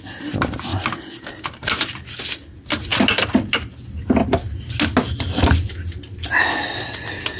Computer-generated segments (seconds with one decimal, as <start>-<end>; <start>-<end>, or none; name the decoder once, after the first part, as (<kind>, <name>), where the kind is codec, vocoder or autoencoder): none